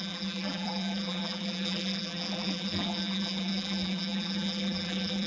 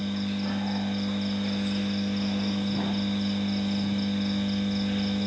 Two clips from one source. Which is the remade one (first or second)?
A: first